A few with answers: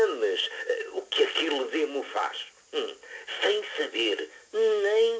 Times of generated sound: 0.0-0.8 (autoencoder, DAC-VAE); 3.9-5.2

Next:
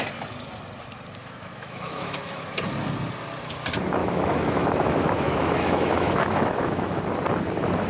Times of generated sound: 1.2-2.5 (autoencoder, DAC-VAE); 4.0-7.0